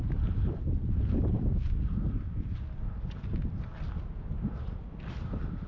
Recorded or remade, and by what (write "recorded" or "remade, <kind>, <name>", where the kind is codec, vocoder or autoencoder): recorded